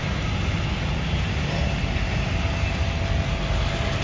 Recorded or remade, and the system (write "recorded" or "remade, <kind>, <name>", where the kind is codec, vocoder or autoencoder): recorded